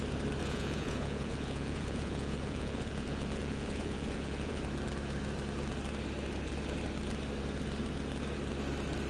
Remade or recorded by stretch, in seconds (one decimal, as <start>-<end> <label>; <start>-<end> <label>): 0.0-0.4 recorded; 0.4-4.6 remade; 4.6-9.1 recorded